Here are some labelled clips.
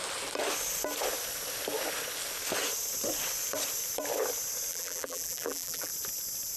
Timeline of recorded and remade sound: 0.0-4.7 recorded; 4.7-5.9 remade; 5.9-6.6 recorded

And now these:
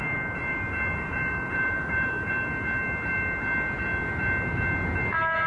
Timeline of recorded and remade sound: 0.0-0.9 recorded; 0.9-2.3 remade; 2.3-5.5 recorded

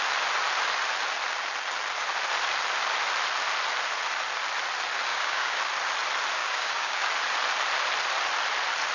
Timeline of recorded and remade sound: 0.0-5.1 recorded; 5.1-5.6 remade; 5.6-6.4 recorded; 6.4-7.0 remade; 7.0-8.9 recorded

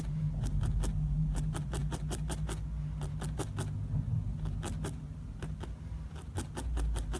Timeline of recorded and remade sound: 0.0-7.2 recorded

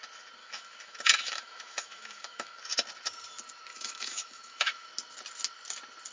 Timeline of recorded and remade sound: 0.0-0.4 recorded; 0.4-2.6 remade; 2.6-3.7 recorded; 3.7-4.9 remade; 4.9-6.1 recorded

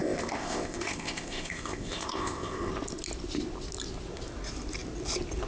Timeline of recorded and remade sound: 0.0-2.7 remade; 2.7-5.5 recorded

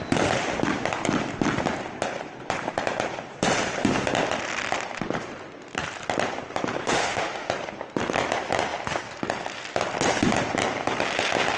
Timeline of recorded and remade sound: 0.0-6.8 recorded; 6.8-7.5 remade; 7.5-11.6 recorded

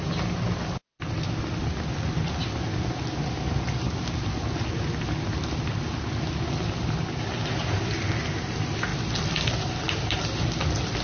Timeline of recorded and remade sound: 0.0-8.9 recorded; 8.9-9.6 remade; 9.6-11.0 recorded